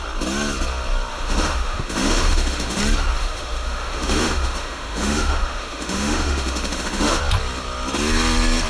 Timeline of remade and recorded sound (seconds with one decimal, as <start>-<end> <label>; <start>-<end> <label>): 0.0-1.1 recorded; 1.1-2.8 remade; 2.8-3.2 recorded; 3.2-7.2 remade; 7.2-8.7 recorded